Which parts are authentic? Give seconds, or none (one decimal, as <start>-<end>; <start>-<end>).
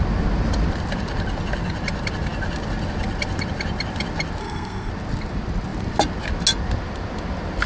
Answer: 0.0-4.4; 4.9-7.7